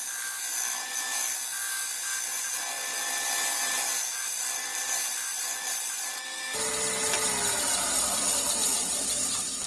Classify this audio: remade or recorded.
recorded